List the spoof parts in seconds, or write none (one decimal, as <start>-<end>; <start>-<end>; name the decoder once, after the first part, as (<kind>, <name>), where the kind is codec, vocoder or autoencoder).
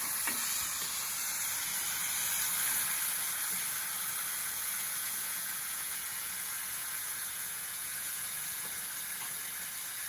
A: 4.4-8.8 (vocoder, Vocos)